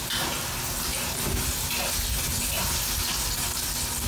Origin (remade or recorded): recorded